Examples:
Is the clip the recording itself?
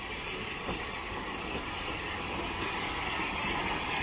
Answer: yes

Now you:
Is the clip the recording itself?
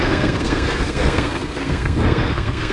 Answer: no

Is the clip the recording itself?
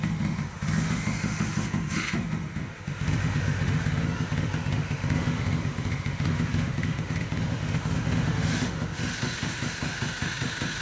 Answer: no